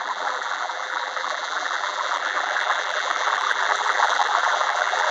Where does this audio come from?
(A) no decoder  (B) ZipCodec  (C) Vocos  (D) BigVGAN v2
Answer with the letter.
D